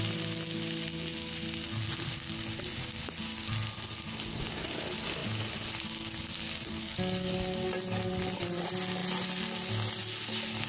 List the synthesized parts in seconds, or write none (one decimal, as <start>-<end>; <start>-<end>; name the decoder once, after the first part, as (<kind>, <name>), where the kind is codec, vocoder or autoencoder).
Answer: none